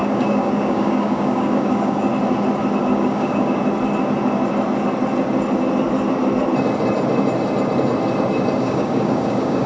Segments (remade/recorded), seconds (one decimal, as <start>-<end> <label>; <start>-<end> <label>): 0.0-2.1 remade; 2.1-2.8 recorded; 2.8-3.6 remade; 3.6-8.6 recorded; 8.6-9.7 remade